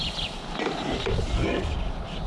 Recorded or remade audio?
recorded